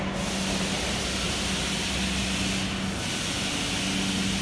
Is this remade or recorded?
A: recorded